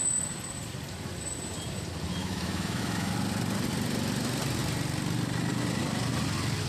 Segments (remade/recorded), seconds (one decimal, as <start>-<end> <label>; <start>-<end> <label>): 0.0-2.2 recorded; 2.2-3.1 remade; 3.1-6.7 recorded